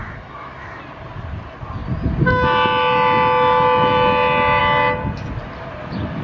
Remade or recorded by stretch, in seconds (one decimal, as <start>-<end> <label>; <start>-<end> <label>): 0.0-0.8 remade; 0.8-6.2 recorded